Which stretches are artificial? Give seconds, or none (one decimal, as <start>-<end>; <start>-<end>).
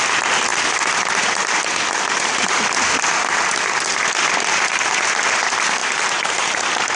5.8-6.6